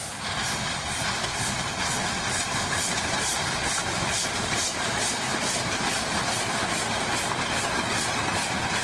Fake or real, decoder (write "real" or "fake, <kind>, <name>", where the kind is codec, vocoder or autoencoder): fake, vocoder, BigVGAN v2